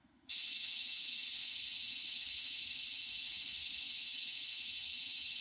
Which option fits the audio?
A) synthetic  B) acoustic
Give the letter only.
A